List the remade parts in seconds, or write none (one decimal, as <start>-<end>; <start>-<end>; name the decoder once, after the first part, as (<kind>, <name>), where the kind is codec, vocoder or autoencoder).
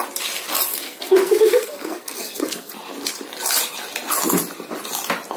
0.7-2.7 (codec, SNAC)